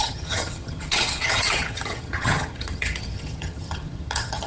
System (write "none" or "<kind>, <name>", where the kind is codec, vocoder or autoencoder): vocoder, HiFi-GAN